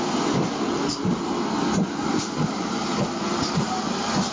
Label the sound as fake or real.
real